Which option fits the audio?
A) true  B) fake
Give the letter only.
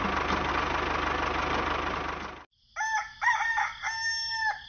A